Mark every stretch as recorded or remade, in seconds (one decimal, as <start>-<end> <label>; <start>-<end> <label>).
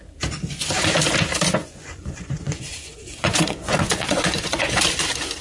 0.0-1.6 recorded; 1.6-4.8 remade; 4.8-5.4 recorded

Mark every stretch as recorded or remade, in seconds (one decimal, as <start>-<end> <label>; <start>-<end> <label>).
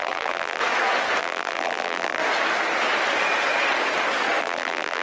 0.0-0.6 remade; 0.6-1.2 recorded; 1.2-2.2 remade; 2.2-4.4 recorded; 4.4-5.0 remade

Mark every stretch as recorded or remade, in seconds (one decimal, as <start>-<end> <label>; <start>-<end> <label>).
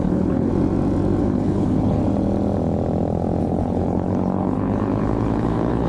0.0-0.5 remade; 0.5-1.2 recorded; 1.2-2.0 remade; 2.0-3.4 recorded; 3.4-5.9 remade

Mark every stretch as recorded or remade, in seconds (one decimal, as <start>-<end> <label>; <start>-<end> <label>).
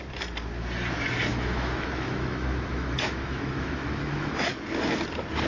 0.0-1.3 recorded; 1.3-4.6 remade; 4.6-5.5 recorded